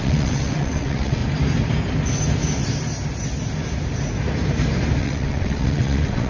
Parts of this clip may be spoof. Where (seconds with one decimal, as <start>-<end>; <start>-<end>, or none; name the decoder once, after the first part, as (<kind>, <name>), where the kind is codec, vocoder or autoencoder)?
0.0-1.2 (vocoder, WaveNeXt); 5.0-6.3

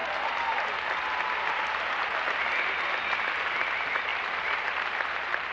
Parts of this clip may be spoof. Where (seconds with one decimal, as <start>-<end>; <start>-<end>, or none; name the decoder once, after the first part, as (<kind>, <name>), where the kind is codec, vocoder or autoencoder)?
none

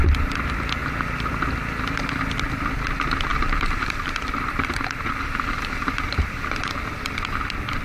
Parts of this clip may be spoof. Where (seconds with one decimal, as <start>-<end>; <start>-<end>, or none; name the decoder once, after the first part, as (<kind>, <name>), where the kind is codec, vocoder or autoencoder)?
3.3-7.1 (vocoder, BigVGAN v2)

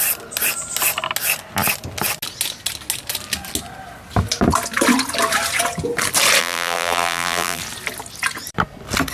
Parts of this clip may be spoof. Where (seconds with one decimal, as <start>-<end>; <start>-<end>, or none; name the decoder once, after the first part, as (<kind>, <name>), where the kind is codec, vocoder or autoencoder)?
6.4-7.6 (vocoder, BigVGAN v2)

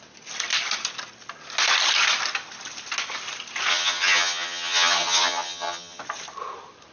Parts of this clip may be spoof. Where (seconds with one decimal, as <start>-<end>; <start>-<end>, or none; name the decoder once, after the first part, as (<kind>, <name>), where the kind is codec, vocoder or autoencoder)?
3.7-6.0 (vocoder, HiFi-GAN)

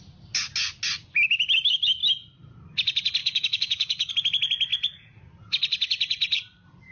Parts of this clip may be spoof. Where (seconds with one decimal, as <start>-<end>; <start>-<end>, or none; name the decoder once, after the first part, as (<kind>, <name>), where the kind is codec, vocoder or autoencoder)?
3.2-4.1 (autoencoder, DAC-VAE)